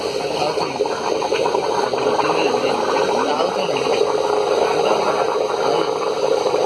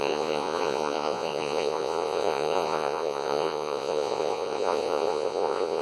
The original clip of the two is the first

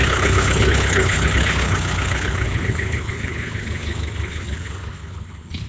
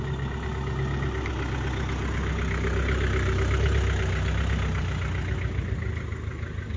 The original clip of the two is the second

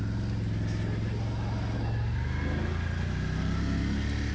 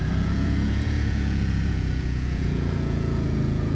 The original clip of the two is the first